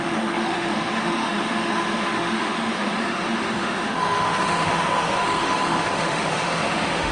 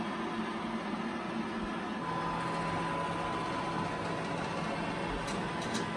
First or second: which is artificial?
first